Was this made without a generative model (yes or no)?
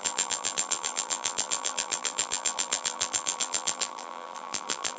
no